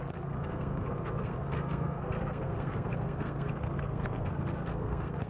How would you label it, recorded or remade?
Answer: remade